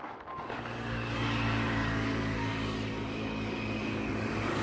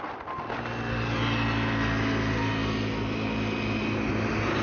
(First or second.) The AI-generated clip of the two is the first